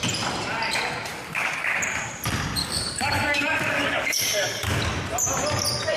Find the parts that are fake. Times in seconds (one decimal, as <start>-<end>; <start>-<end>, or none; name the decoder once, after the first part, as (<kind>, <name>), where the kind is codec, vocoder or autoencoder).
1.1-1.8 (codec, DAC); 2.6-4.8

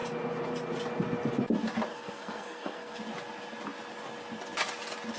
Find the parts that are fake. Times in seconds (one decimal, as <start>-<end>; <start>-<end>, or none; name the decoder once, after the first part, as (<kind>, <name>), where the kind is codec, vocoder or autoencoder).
1.9-3.0 (codec, SNAC)

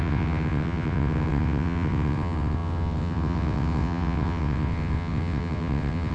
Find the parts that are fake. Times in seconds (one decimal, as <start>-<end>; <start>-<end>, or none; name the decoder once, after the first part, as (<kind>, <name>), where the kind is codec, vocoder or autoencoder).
0.0-6.1 (vocoder, WaveNeXt)

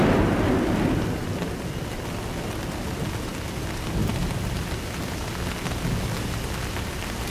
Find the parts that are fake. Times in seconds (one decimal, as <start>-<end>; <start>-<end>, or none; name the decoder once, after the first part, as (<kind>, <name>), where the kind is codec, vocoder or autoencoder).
1.2-2.2 (vocoder, BigVGAN v2)